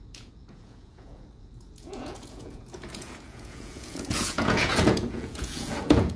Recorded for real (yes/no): no